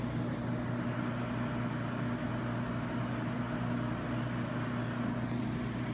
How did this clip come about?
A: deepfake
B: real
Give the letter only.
B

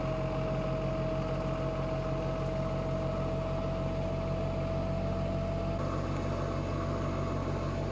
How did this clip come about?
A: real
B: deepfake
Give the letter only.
A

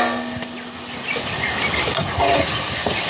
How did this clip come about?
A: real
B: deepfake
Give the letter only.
A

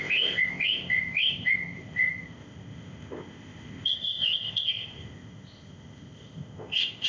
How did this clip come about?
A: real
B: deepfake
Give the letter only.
B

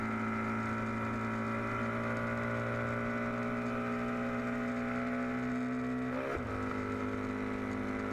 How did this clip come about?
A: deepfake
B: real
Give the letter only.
B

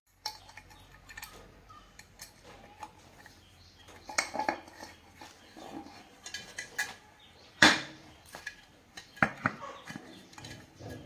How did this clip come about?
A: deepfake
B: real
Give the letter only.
A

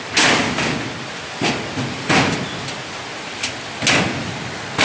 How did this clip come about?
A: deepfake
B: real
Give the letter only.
B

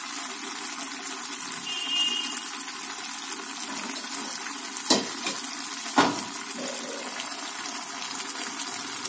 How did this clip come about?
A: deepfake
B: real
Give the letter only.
B